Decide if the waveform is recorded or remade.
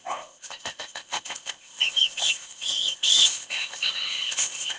remade